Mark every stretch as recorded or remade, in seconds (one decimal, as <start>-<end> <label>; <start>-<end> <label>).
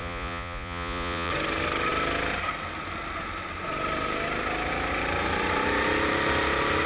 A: 0.0-1.3 remade; 1.3-6.9 recorded